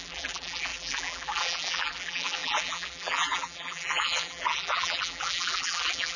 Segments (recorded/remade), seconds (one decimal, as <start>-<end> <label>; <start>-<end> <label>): 0.0-6.2 remade